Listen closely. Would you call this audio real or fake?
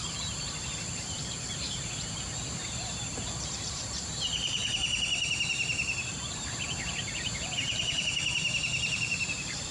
fake